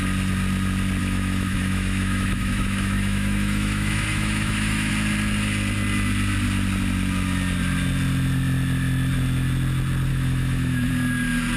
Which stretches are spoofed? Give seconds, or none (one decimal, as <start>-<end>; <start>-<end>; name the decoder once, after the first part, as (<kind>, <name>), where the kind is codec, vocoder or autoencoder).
1.0-4.9 (autoencoder, DAC-VAE); 10.1-10.9